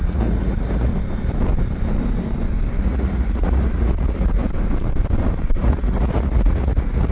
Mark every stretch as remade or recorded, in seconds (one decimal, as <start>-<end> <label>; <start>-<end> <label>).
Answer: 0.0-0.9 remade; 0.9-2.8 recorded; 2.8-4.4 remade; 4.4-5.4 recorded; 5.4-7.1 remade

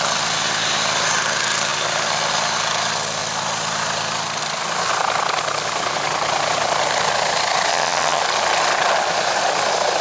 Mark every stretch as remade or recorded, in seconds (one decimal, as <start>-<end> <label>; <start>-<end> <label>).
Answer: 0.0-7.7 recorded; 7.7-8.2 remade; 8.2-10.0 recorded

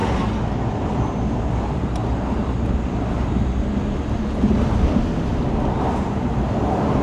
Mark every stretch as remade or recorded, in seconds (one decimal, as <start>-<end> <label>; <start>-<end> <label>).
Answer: 0.0-1.6 recorded; 1.6-2.0 remade; 2.0-5.8 recorded; 5.8-7.0 remade